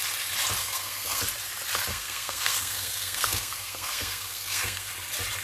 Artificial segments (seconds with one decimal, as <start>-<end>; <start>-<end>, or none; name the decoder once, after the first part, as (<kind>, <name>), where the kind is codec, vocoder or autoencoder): 0.6-1.2 (codec, SNAC); 1.9-4.9